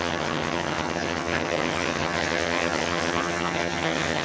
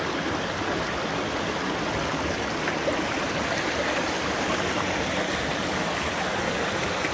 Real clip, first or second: second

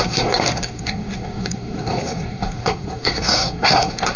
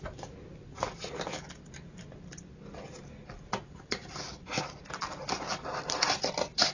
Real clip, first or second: second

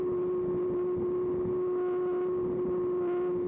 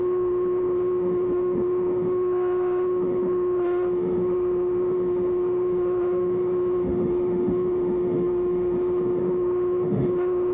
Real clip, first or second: first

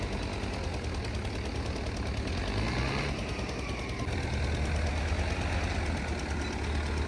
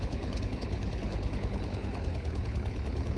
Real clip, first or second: first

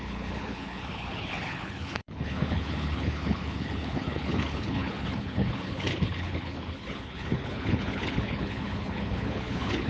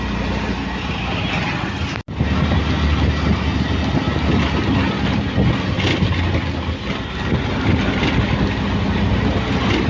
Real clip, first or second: second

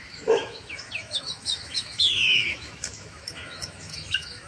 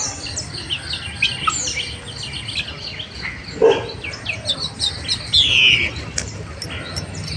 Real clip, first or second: second